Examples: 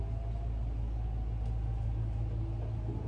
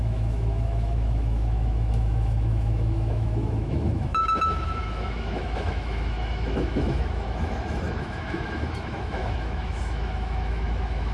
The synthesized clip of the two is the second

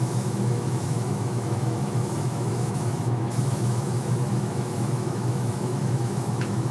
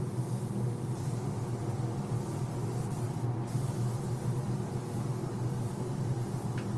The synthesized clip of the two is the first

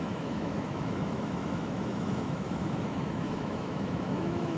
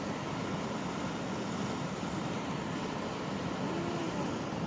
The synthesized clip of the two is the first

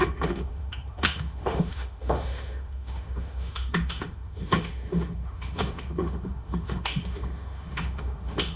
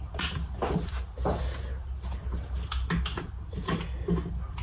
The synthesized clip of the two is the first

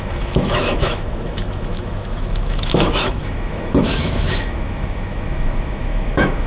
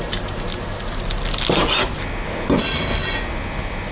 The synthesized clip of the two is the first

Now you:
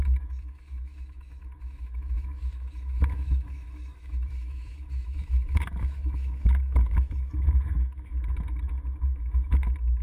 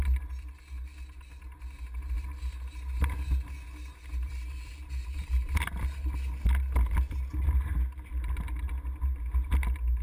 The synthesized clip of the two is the first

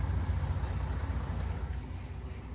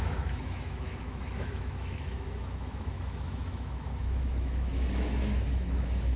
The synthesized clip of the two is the second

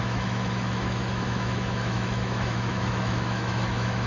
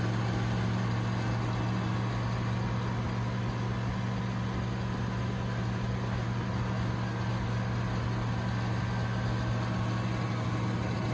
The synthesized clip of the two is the first